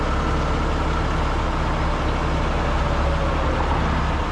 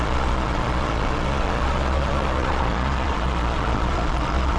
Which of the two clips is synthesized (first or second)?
second